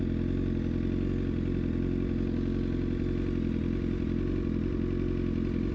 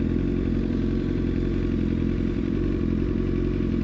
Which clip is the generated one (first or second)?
second